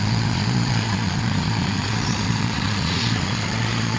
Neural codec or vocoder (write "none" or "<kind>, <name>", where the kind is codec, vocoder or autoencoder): vocoder, Vocos